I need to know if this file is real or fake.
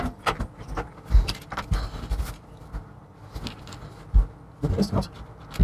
real